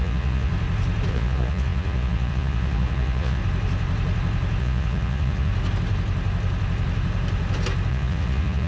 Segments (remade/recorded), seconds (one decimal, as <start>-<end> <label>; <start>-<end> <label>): 0.0-0.5 remade; 0.5-1.1 recorded; 1.1-3.4 remade; 3.4-4.6 recorded; 4.6-5.5 remade; 5.5-7.9 recorded; 7.9-8.7 remade